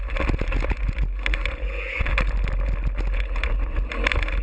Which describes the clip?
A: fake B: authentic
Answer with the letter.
B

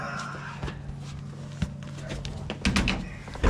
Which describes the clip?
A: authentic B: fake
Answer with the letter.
A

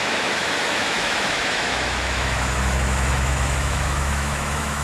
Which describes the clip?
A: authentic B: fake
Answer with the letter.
B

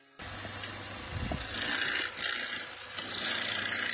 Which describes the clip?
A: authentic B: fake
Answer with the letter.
A